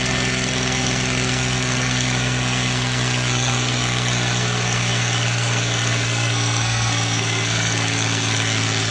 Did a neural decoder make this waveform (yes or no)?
yes